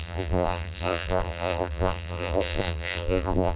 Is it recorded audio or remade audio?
remade